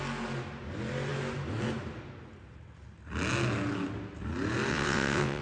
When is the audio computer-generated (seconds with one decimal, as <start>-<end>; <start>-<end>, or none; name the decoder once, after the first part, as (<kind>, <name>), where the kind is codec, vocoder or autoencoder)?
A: 4.7-5.4 (vocoder, WaveNeXt)